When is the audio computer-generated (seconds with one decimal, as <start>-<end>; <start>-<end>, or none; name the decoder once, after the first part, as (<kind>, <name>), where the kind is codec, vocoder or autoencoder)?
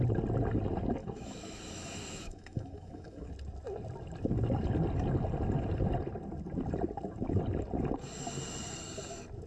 1.0-3.3 (autoencoder, DAC-VAE)